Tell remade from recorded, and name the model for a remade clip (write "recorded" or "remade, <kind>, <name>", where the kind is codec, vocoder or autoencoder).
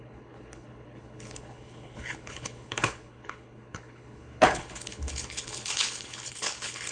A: remade, codec, HILCodec